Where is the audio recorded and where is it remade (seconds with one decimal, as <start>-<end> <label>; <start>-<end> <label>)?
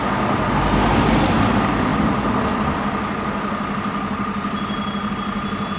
0.0-5.8 recorded